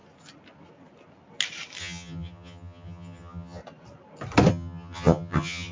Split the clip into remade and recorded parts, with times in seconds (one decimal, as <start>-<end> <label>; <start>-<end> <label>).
0.0-1.8 recorded; 1.8-3.6 remade; 3.6-4.5 recorded; 4.5-5.7 remade